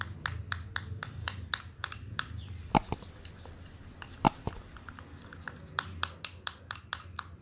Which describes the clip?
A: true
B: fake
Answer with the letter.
A